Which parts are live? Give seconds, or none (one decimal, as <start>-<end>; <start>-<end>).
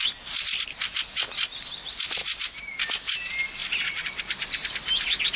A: 0.0-2.2; 2.8-3.6; 4.2-5.4